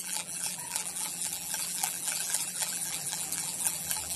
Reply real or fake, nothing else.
fake